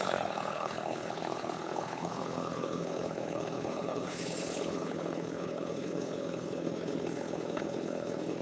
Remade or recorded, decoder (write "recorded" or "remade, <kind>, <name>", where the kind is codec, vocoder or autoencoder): remade, codec, HILCodec